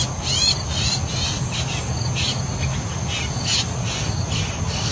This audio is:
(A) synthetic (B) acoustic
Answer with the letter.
B